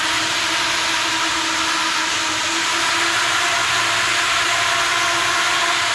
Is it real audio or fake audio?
real